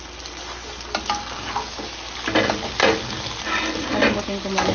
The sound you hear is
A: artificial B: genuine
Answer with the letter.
B